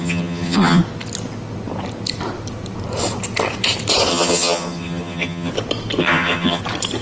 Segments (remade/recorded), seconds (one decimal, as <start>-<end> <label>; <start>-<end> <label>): 0.0-0.8 remade; 0.8-4.1 recorded; 4.1-5.5 remade; 5.5-6.0 recorded; 6.0-6.6 remade; 6.6-7.0 recorded